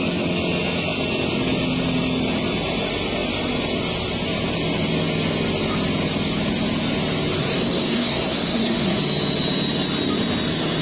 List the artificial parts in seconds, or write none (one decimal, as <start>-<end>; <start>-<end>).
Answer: 7.4-9.0

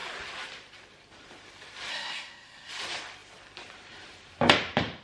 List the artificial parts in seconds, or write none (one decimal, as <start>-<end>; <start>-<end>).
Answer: 1.9-2.7

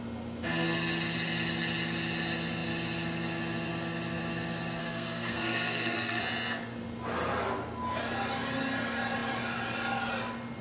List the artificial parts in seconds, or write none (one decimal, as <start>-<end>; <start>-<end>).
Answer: 4.8-6.2

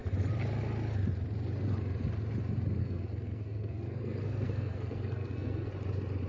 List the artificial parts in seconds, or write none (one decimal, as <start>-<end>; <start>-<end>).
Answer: 2.8-5.7

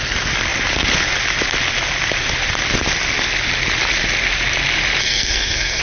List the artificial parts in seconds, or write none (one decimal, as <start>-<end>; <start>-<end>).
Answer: 5.0-5.8

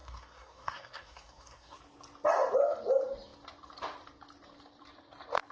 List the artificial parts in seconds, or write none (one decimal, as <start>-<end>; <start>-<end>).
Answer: 0.0-1.8

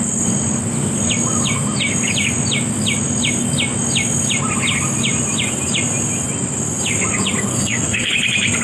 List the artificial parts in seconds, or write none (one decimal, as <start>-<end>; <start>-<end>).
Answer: 7.5-8.1

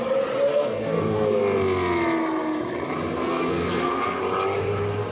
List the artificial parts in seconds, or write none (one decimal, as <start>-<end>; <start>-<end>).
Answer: 0.5-1.4; 3.2-4.2